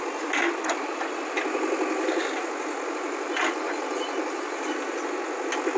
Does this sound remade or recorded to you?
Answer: recorded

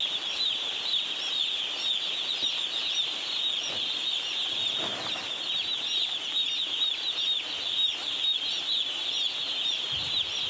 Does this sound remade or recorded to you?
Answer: recorded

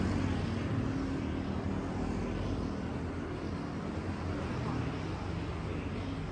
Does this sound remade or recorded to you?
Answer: recorded